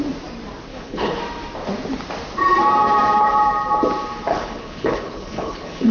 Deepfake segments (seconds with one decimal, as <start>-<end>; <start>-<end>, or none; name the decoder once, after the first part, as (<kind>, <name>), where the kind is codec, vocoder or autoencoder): 0.7-1.2 (codec, HILCodec); 4.3-5.9